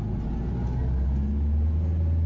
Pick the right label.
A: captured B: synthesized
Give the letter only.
A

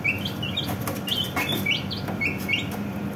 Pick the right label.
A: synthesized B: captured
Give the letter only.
B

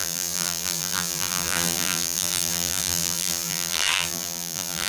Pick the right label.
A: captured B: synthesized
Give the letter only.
B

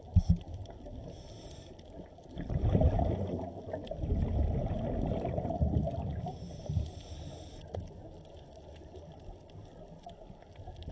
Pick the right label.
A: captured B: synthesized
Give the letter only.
A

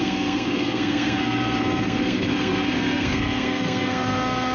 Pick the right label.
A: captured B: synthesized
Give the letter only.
B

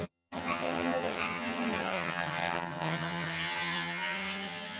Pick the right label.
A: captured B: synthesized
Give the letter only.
B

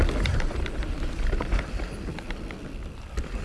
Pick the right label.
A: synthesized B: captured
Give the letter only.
B